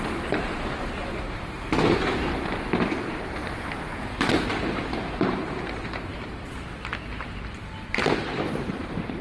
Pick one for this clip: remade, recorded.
remade